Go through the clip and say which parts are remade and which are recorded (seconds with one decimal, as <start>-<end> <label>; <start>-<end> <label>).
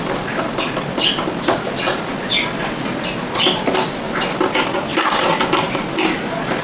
0.0-6.6 recorded